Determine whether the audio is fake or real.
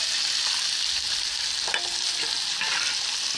real